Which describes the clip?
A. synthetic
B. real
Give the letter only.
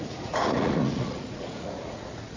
A